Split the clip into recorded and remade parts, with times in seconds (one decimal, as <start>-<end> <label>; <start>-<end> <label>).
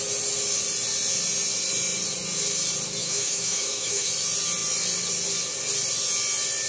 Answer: 0.0-3.0 recorded; 3.0-4.1 remade; 4.1-6.7 recorded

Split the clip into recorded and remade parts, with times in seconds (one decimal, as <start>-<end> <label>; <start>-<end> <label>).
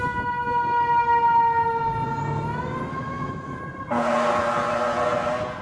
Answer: 0.0-2.9 recorded; 2.9-3.6 remade; 3.6-5.6 recorded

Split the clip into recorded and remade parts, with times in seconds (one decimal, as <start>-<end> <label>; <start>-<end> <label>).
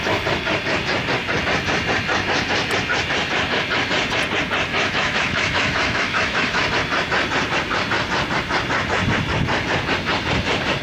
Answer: 0.0-4.7 recorded; 4.7-6.7 remade; 6.7-10.8 recorded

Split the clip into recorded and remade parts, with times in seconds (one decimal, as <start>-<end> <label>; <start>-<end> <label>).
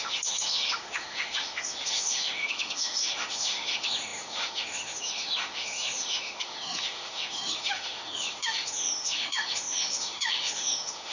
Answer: 0.0-11.1 remade